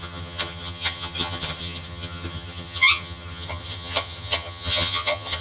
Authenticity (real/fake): fake